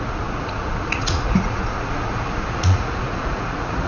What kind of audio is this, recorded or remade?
remade